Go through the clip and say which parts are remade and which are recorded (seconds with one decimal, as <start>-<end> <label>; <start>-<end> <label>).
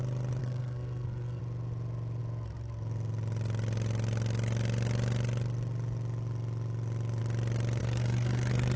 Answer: 0.0-0.4 recorded; 0.4-1.4 remade; 1.4-7.8 recorded; 7.8-8.8 remade